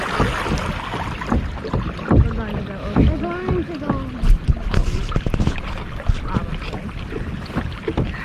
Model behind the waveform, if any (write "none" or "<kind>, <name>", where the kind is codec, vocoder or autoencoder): none